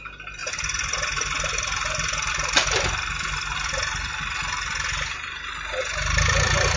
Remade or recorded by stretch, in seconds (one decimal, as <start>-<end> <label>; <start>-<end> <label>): 0.0-0.4 recorded; 0.4-2.3 remade; 2.3-6.8 recorded